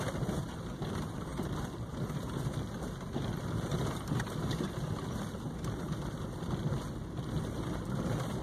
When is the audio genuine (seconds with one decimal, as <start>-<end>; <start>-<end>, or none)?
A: 0.0-8.4